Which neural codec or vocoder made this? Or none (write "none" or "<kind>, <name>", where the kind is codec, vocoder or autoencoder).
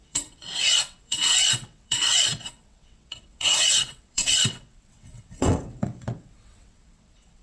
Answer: vocoder, WaveNeXt